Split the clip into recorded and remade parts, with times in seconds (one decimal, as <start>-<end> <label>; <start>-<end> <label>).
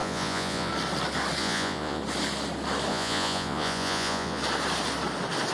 0.0-0.7 remade; 0.7-1.4 recorded; 1.4-2.0 remade; 2.0-2.9 recorded; 2.9-4.4 remade; 4.4-5.5 recorded